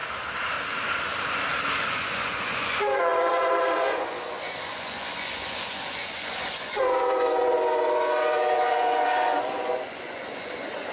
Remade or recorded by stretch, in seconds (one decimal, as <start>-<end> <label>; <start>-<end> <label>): 0.0-1.9 recorded; 1.9-10.9 remade